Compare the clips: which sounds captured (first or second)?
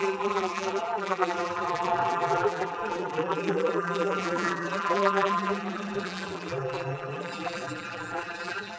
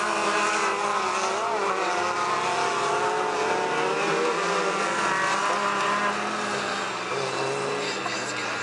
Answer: second